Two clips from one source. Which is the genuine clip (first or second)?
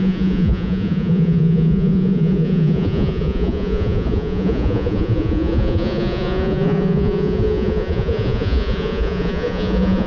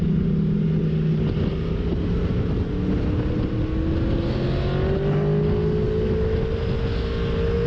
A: second